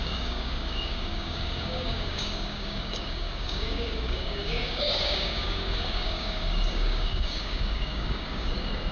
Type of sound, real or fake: fake